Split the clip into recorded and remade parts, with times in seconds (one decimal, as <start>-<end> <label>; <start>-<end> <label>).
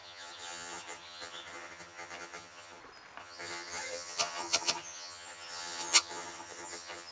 0.0-2.8 remade; 2.8-3.2 recorded; 3.2-7.1 remade